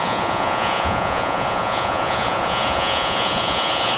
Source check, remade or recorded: remade